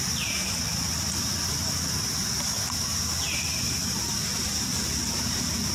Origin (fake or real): real